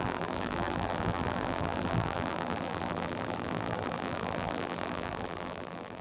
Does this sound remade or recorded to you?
remade